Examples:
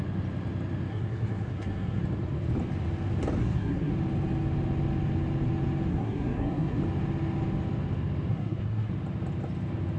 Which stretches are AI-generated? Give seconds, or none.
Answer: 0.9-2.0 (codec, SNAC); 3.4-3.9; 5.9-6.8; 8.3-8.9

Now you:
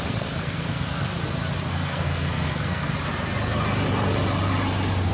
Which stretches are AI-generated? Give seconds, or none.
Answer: 0.0-1.1 (codec, SNAC); 1.7-2.9